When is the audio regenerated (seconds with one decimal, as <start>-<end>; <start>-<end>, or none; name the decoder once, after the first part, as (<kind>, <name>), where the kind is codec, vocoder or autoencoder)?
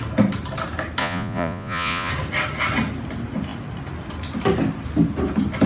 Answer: 1.0-2.1 (vocoder, Vocos)